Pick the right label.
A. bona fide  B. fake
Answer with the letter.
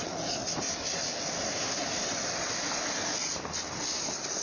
A